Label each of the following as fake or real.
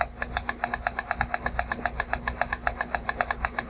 real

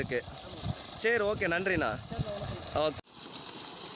real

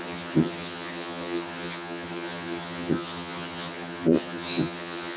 fake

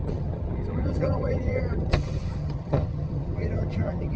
fake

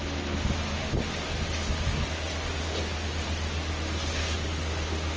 real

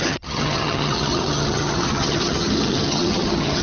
fake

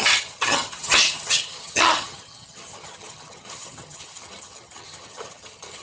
fake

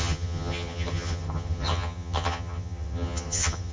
fake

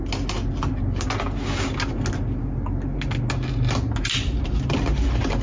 real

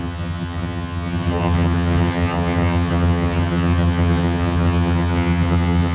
fake